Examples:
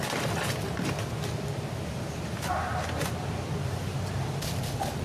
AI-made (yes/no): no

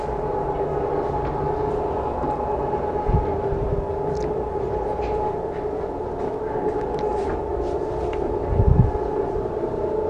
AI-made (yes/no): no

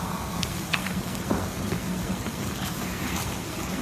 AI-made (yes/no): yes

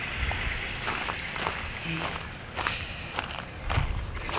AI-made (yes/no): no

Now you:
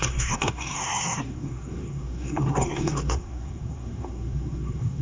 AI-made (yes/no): yes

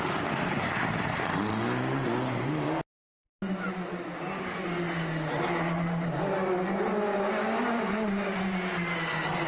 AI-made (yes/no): no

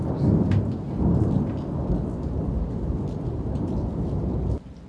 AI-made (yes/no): no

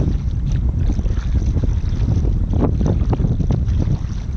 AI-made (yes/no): no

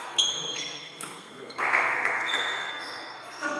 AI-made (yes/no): yes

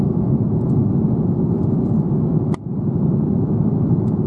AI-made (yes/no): no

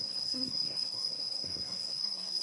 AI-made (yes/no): yes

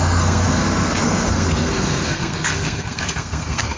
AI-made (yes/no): yes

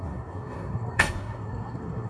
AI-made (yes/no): yes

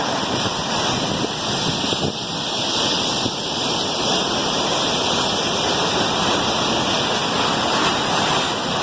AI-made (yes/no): no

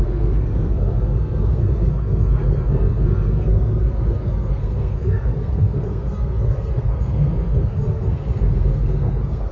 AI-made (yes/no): yes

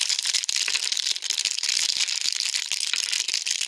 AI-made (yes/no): no